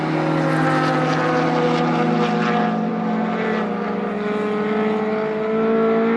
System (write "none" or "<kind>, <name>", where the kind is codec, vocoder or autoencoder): none